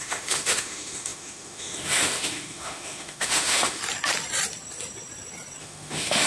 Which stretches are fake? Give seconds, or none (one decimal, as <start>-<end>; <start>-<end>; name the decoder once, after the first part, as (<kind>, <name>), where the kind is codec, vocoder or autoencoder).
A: 0.0-3.8 (autoencoder, DAC-VAE); 5.6-6.3